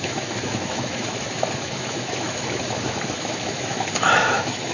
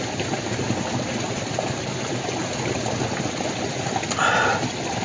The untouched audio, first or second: second